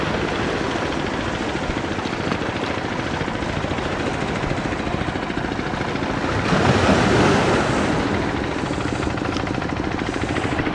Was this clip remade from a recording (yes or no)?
no